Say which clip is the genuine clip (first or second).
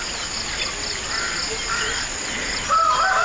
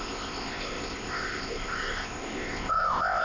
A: first